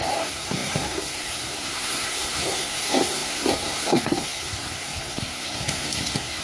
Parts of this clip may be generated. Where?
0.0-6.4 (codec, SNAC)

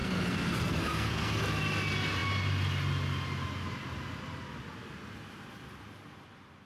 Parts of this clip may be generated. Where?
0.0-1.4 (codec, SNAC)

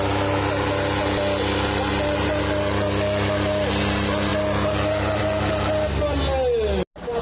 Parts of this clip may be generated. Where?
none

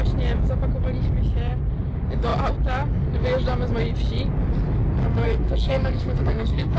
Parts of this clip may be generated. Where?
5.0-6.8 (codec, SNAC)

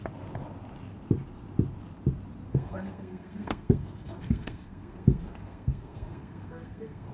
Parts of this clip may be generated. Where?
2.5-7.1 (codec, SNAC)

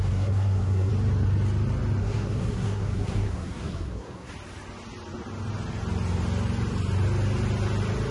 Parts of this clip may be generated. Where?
0.0-0.9 (codec, SNAC); 2.0-4.3